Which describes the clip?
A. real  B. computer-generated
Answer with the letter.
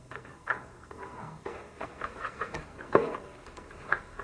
B